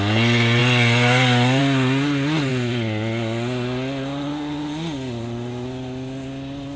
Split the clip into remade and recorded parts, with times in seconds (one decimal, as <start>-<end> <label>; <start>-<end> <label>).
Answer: 0.0-6.8 recorded